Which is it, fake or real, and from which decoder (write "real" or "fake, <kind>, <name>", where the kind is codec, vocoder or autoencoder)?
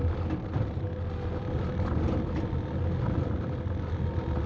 real